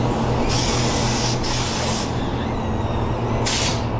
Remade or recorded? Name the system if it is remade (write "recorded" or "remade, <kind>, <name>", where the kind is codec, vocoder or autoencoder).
recorded